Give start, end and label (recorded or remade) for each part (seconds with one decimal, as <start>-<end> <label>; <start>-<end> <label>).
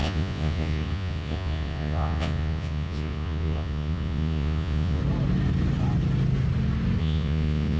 0.0-5.0 remade; 5.0-7.0 recorded; 7.0-7.8 remade